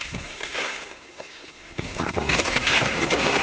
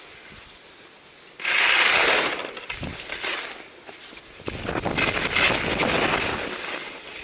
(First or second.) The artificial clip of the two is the first